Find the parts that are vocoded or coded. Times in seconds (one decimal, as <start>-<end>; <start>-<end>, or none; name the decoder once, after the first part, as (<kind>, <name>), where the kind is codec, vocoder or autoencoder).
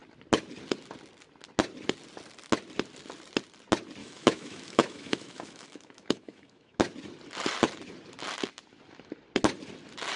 4.0-6.8 (autoencoder, DAC-VAE)